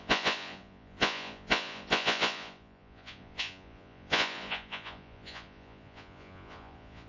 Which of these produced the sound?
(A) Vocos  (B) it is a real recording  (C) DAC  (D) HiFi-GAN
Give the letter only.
A